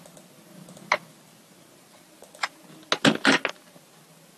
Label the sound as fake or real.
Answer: real